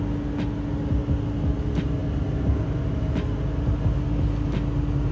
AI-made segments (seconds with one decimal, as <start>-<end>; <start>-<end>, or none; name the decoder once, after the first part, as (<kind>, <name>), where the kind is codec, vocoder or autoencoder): none